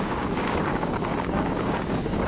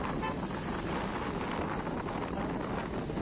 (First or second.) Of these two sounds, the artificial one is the first